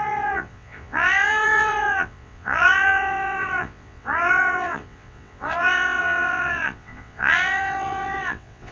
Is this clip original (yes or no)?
no